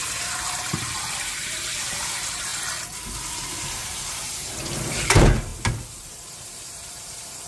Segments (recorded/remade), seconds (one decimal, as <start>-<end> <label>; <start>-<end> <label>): 0.0-2.5 remade; 2.5-3.5 recorded; 3.5-7.5 remade